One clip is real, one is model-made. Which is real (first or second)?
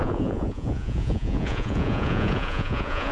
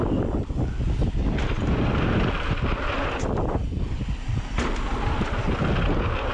second